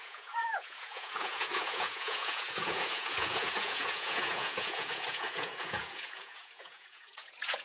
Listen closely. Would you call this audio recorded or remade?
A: remade